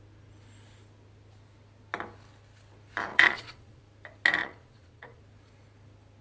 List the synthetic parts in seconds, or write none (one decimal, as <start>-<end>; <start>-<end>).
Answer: 3.1-3.8; 4.4-5.2